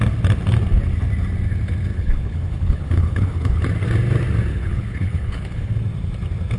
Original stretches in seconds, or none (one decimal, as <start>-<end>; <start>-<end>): 0.0-1.9; 3.6-4.5; 5.7-6.6